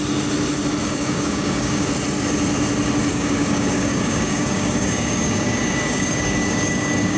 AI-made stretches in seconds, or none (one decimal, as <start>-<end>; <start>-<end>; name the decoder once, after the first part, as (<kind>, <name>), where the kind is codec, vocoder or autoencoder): 0.8-1.9 (codec, DAC); 3.1-7.2